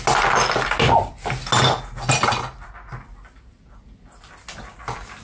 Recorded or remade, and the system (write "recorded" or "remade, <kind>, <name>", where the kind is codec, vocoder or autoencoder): recorded